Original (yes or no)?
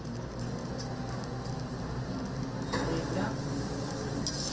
yes